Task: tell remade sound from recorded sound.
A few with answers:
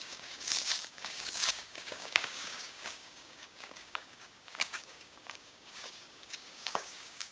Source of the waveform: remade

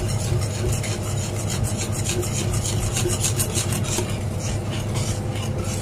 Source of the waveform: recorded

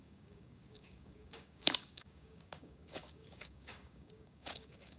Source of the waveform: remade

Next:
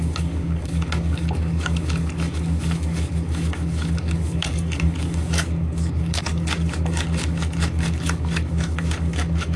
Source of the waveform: remade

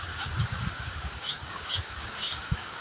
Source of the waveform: remade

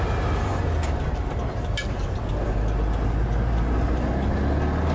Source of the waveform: recorded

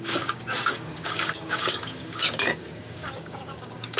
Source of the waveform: remade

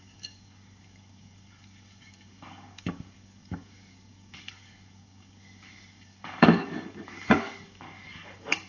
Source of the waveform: remade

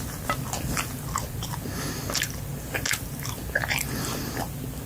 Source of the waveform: recorded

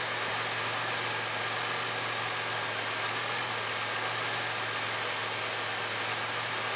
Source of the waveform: recorded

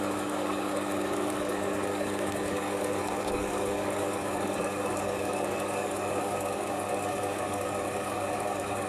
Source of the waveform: remade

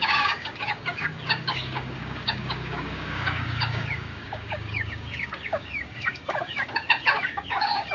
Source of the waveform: remade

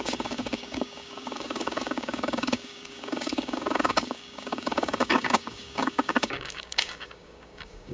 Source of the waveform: remade